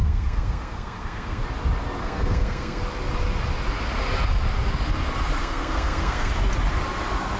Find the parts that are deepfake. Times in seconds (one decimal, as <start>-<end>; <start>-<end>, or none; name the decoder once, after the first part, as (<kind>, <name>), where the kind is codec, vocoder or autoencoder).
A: 0.0-1.4 (codec, SNAC); 2.0-2.8; 5.4-6.3